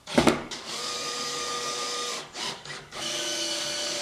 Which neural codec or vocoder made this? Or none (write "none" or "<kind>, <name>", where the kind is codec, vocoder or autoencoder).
codec, DAC